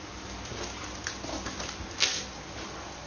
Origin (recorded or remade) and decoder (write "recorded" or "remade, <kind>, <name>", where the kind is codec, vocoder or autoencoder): recorded